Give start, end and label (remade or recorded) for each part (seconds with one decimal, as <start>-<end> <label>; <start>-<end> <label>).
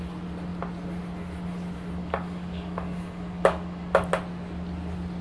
0.0-2.0 recorded; 2.0-4.1 remade; 4.1-5.2 recorded